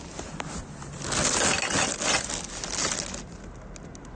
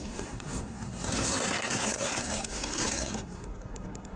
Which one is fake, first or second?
second